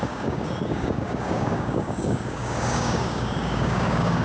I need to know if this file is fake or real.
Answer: fake